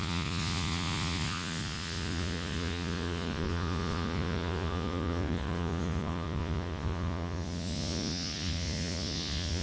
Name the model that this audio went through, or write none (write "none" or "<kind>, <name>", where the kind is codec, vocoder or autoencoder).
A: vocoder, Vocos